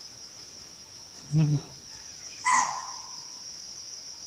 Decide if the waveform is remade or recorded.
remade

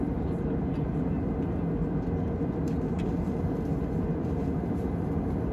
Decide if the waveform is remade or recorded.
recorded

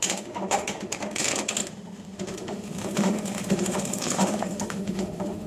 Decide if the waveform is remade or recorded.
remade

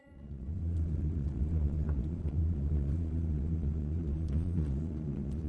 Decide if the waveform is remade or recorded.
remade